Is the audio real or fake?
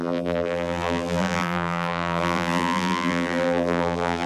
fake